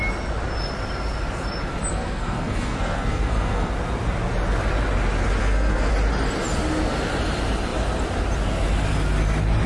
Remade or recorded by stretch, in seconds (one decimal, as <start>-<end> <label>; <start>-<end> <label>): 0.0-1.9 recorded; 1.9-3.7 remade; 3.7-5.4 recorded; 5.4-5.9 remade; 5.9-9.7 recorded

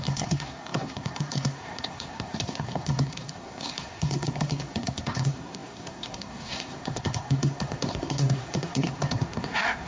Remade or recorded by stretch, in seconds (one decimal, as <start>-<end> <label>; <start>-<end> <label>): 0.0-9.9 remade

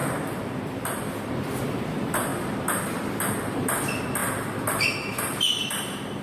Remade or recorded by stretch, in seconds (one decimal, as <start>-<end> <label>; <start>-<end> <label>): 0.0-2.3 remade; 2.3-3.5 recorded; 3.5-4.2 remade; 4.2-5.5 recorded; 5.5-6.2 remade

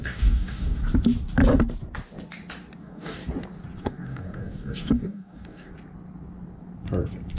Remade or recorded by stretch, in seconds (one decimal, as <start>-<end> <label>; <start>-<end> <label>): 0.0-0.8 remade; 0.8-2.8 recorded; 2.8-3.2 remade; 3.2-3.8 recorded; 3.8-5.7 remade; 5.7-7.4 recorded

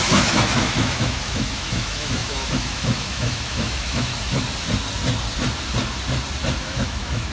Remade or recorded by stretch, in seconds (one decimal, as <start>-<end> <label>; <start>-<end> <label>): 0.0-4.1 remade; 4.1-6.6 recorded; 6.6-7.3 remade

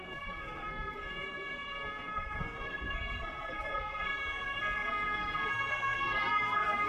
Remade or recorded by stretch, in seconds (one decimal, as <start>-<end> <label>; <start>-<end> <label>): 0.0-6.9 remade

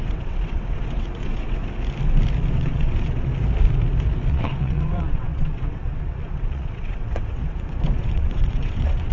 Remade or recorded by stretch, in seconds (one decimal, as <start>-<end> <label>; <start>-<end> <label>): 0.0-1.6 remade; 1.6-2.5 recorded; 2.5-3.3 remade; 3.3-4.3 recorded; 4.3-9.1 remade

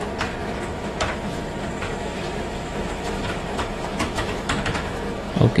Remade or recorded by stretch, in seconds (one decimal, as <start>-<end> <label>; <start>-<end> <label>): 0.0-0.4 recorded; 0.4-1.4 remade; 1.4-2.0 recorded; 2.0-5.6 remade